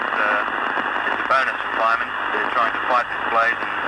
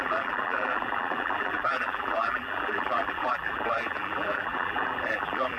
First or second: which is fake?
second